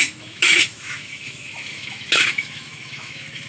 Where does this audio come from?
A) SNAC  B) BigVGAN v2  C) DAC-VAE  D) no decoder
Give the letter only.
C